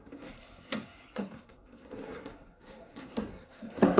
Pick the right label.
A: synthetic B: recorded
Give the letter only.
A